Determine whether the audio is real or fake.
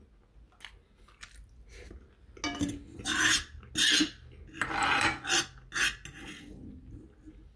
real